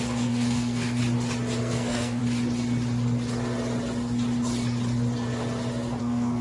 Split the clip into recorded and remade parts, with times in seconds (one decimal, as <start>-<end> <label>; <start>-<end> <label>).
0.0-1.0 remade; 1.0-1.6 recorded; 1.6-2.2 remade; 2.2-6.0 recorded; 6.0-6.4 remade